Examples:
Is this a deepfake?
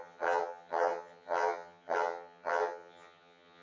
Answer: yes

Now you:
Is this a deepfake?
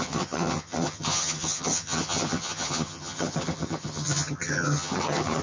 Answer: yes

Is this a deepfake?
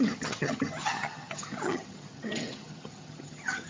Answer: yes